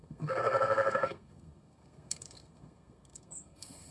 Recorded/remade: remade